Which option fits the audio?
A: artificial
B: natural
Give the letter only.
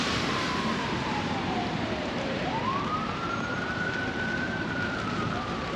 A